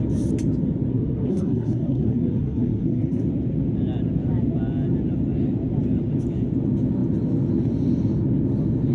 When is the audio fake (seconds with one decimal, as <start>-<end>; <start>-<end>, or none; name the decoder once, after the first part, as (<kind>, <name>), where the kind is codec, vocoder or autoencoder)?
0.9-3.2 (codec, SNAC)